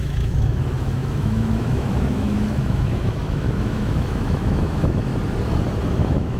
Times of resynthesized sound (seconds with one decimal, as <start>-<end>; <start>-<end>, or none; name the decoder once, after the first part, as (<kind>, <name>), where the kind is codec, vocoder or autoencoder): 0.0-5.1 (autoencoder, DAC-VAE); 6.0-6.4